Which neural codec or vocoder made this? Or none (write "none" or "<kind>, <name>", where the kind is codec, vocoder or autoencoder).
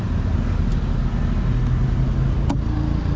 none